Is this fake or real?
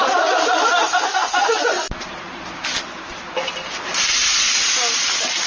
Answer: real